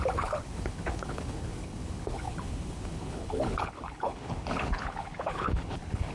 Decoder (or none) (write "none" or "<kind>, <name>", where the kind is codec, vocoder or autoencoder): codec, HILCodec